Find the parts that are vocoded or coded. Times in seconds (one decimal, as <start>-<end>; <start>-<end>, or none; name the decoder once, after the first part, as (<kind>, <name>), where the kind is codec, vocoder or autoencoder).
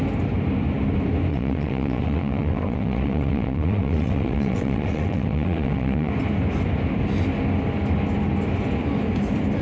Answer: 1.3-6.1 (vocoder, WaveNeXt)